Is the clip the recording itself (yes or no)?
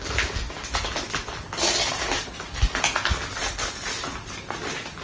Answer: yes